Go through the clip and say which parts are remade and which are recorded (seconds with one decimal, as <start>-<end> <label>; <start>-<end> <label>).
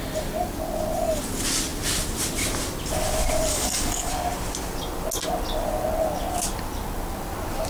0.0-3.5 recorded; 3.5-4.1 remade; 4.1-7.7 recorded